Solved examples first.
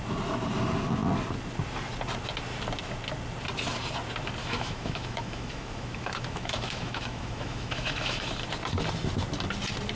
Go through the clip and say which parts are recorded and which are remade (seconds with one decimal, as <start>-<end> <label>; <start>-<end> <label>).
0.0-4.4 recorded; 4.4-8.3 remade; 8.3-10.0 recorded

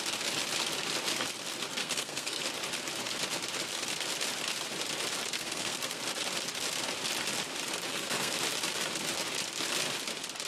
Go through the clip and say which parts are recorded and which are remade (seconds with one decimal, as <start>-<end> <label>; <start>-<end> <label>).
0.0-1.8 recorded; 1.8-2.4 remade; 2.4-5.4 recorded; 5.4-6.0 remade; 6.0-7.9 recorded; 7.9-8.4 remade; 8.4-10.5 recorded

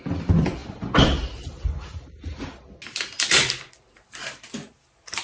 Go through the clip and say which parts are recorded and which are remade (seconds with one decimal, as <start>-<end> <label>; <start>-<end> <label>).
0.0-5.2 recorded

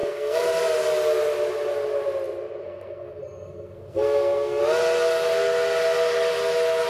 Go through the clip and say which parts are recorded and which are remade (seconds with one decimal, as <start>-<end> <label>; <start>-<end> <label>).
0.0-0.6 remade; 0.6-2.6 recorded; 2.6-4.6 remade; 4.6-6.9 recorded